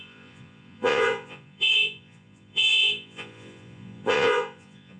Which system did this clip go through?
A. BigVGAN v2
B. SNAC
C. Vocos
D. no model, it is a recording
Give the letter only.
C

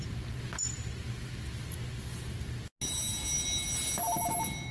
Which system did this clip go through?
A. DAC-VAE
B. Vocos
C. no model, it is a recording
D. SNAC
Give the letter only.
C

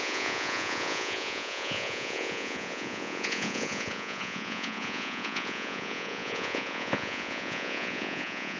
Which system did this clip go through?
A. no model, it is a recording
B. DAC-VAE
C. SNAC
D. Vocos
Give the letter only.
D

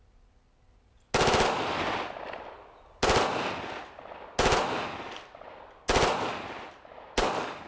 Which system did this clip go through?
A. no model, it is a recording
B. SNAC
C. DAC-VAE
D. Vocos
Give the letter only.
A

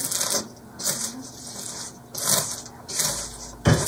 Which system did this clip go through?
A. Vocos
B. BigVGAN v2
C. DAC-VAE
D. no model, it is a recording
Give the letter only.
D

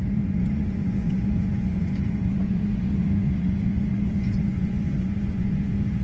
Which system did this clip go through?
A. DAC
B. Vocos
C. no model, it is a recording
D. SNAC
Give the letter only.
B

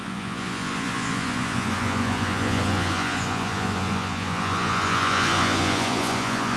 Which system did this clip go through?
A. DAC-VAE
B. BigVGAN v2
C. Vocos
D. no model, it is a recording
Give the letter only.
C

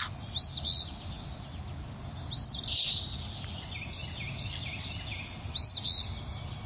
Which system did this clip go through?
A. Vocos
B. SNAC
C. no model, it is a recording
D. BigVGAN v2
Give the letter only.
C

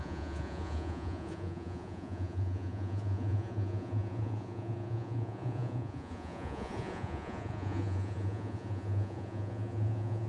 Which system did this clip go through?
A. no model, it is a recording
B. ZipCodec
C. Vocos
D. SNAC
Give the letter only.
C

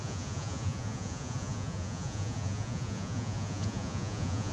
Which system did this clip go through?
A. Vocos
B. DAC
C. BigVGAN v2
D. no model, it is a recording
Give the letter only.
A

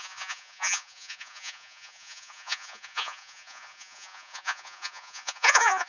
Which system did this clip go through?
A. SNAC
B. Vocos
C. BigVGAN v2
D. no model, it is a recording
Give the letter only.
B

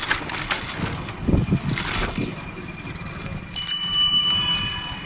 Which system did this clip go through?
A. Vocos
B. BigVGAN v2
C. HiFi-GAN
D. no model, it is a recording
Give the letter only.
D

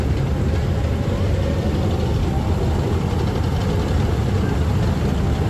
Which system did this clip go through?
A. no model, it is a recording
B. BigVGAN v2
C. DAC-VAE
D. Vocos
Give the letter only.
A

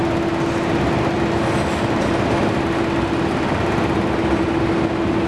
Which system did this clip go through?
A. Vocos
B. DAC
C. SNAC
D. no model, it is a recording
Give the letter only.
D